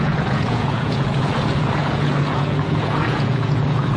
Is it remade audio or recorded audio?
remade